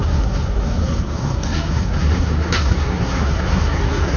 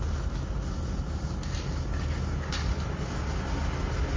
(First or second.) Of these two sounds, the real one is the second